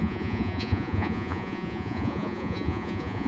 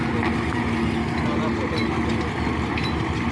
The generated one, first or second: first